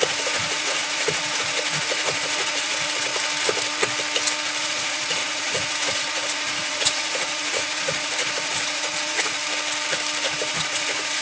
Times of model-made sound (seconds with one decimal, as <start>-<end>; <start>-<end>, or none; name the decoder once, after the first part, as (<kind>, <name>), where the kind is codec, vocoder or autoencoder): 0.0-3.1 (vocoder, Vocos); 4.6-9.4; 10.2-11.2